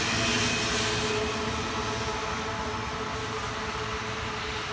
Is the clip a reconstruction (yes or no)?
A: no